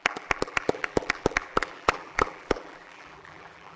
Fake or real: fake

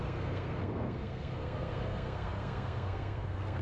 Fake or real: fake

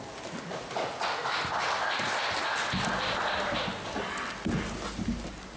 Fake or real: real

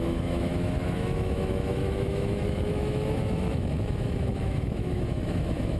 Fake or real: fake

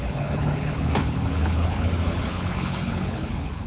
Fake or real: fake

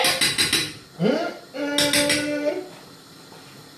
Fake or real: real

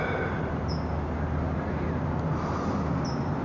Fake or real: real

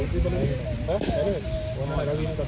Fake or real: real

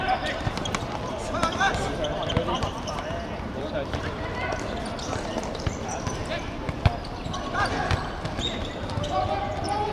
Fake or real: fake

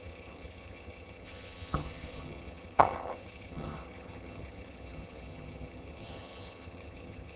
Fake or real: fake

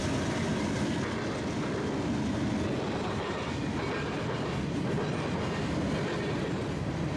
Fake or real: real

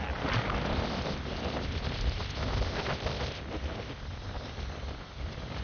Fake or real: real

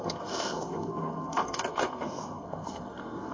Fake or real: fake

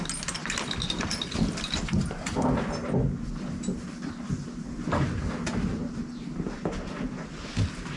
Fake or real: real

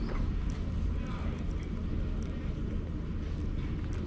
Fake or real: real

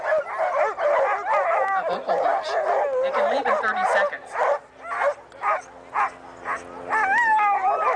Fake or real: real